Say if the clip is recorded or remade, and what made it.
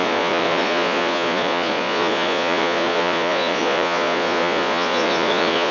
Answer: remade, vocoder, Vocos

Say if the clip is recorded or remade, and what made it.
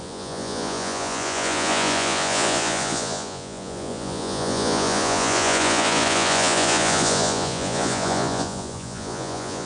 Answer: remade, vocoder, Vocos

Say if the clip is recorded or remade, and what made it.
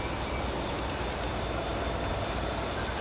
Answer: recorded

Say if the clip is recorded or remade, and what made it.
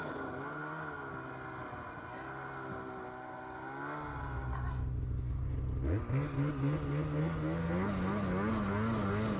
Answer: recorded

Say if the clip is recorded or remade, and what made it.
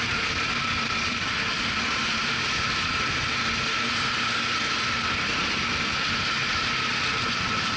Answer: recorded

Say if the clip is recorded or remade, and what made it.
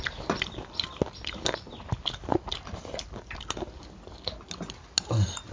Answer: recorded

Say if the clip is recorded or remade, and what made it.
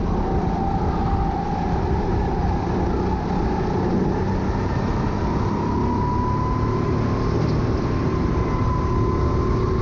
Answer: recorded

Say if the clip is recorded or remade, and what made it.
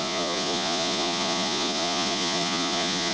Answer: remade, vocoder, Vocos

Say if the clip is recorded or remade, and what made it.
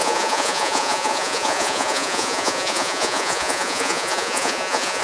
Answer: remade, vocoder, Vocos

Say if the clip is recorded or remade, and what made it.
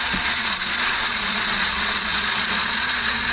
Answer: remade, vocoder, Vocos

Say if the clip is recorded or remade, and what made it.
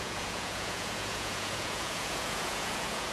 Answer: remade, vocoder, Vocos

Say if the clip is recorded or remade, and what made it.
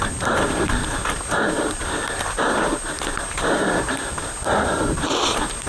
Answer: recorded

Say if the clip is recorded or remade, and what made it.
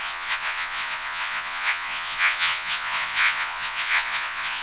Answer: remade, vocoder, Vocos